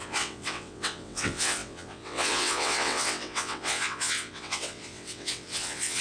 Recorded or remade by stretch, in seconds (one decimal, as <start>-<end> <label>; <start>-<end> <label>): 0.0-6.0 remade